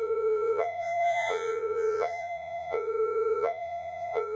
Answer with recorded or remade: remade